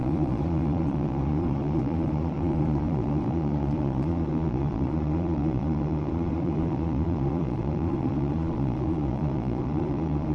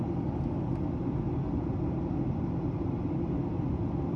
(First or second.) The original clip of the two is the second